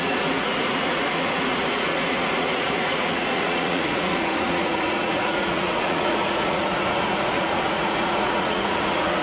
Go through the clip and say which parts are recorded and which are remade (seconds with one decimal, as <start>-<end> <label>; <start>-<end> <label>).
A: 0.0-9.2 remade